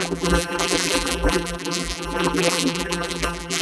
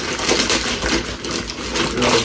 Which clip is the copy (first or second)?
first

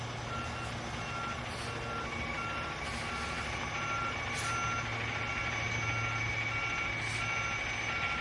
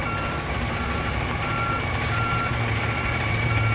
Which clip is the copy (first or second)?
second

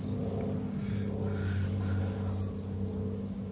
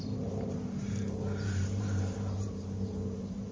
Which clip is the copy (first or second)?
second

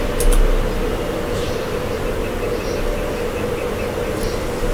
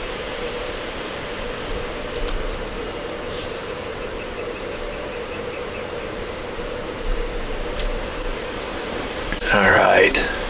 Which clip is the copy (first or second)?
second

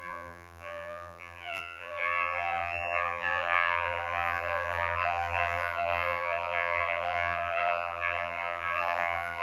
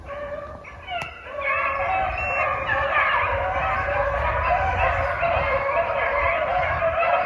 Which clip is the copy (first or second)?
first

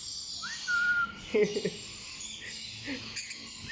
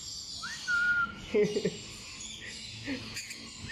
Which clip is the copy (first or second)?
first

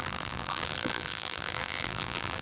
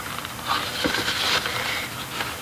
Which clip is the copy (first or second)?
first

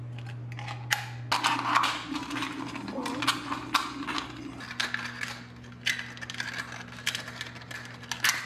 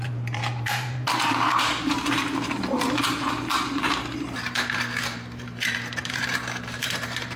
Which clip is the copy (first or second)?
second